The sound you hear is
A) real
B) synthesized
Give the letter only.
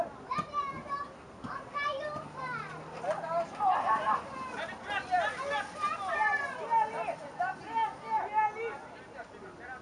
A